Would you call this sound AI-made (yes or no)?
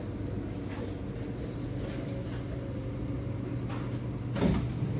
no